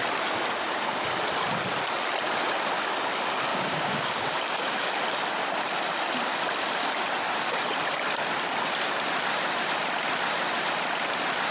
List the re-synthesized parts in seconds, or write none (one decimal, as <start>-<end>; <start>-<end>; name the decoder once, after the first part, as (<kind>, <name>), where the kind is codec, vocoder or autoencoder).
3.5-4.9 (codec, DAC)